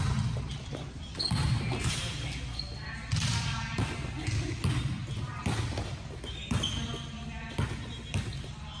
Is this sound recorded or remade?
recorded